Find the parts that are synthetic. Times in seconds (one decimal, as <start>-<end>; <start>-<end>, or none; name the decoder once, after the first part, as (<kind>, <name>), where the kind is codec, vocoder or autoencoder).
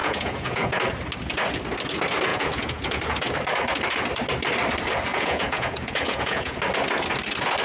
0.0-0.7 (vocoder, Vocos); 2.3-3.0; 5.1-6.6